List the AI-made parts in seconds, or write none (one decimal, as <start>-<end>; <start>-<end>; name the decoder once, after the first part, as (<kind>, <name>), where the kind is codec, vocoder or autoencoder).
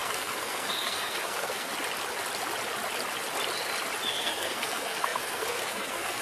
0.0-1.7 (codec, SNAC); 4.1-6.2